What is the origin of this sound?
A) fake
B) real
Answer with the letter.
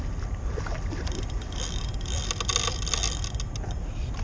B